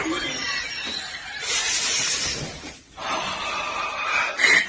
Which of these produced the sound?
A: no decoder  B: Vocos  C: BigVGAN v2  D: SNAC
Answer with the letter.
A